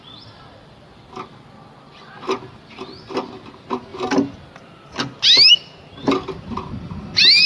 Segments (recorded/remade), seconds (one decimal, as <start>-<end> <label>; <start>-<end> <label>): 0.0-7.5 recorded